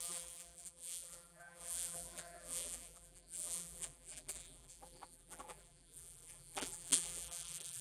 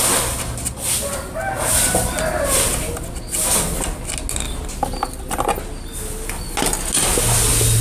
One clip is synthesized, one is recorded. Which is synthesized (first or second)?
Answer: first